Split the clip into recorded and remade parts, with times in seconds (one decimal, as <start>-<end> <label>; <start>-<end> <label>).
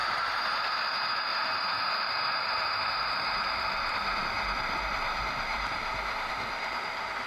0.0-0.8 remade; 0.8-1.3 recorded; 1.3-4.2 remade; 4.2-5.5 recorded; 5.5-6.3 remade; 6.3-7.3 recorded